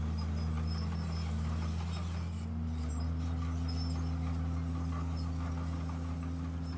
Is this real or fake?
real